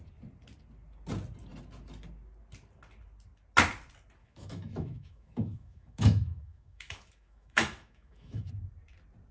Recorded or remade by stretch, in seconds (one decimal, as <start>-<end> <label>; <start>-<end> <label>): 0.0-4.2 recorded; 4.2-8.5 remade; 8.5-9.3 recorded